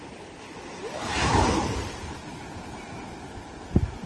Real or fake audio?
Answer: fake